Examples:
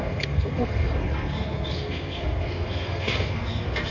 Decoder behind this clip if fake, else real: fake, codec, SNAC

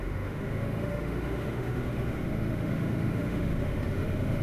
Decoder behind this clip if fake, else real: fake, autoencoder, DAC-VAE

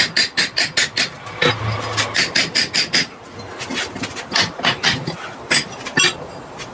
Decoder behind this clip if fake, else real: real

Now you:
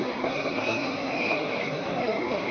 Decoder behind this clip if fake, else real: fake, codec, SNAC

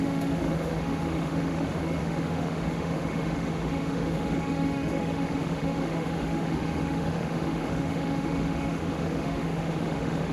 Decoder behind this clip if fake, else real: fake, autoencoder, DAC-VAE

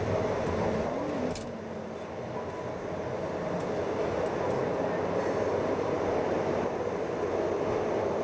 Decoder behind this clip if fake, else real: real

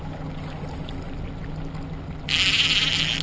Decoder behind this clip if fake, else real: real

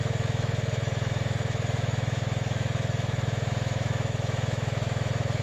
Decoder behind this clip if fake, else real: fake, autoencoder, DAC-VAE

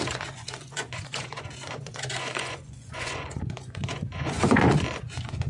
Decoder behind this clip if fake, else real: fake, vocoder, Vocos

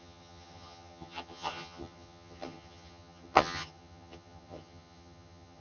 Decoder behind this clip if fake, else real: fake, vocoder, HiFi-GAN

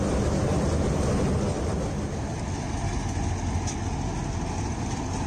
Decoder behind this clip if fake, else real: real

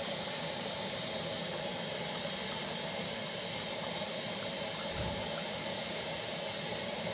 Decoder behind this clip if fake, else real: fake, vocoder, BigVGAN v2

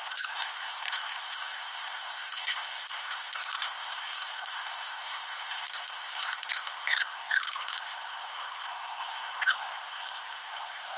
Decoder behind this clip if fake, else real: fake, codec, SNAC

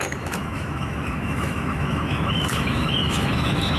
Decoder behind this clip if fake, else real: fake, autoencoder, DAC-VAE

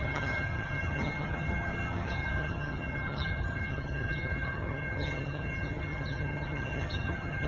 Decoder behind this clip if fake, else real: fake, vocoder, HiFi-GAN